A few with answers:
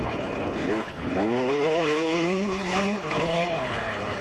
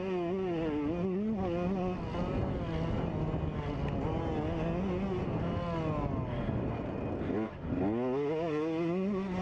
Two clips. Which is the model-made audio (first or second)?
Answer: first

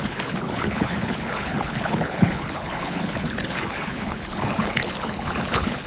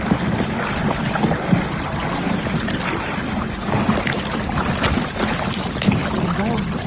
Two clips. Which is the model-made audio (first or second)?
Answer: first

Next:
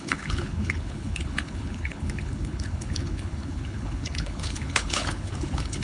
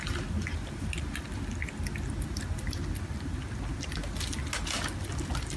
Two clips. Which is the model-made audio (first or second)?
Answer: first